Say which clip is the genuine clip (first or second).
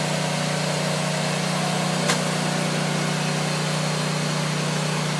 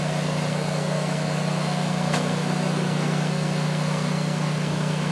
first